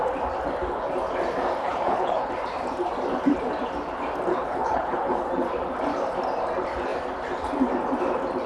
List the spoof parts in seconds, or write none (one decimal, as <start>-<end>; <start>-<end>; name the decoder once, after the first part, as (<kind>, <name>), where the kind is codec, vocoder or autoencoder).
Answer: 1.6-2.3 (codec, HILCodec); 4.3-5.3